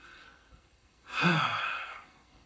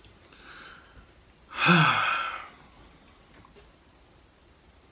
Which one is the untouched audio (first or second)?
second